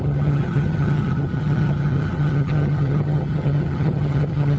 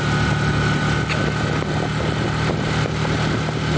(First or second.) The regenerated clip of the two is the first